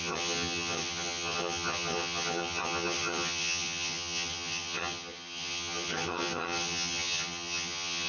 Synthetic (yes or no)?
yes